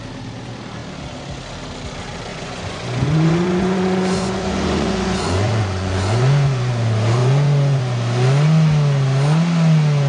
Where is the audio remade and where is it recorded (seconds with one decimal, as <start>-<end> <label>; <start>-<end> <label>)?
0.0-2.3 recorded; 2.3-6.7 remade; 6.7-7.2 recorded; 7.2-7.8 remade; 7.8-10.1 recorded